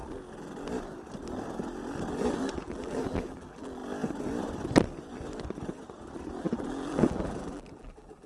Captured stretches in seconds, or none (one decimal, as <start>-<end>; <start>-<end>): 0.0-2.1; 3.8-6.4